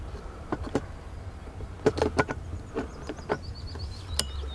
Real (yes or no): yes